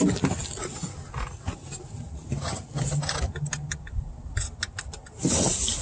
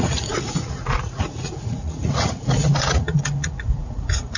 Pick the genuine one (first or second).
first